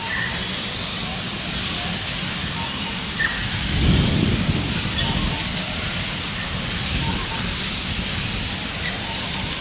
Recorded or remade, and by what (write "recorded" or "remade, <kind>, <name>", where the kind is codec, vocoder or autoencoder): recorded